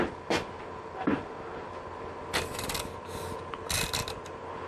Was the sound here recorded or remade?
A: recorded